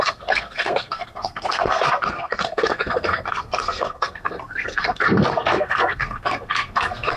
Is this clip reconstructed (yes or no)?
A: yes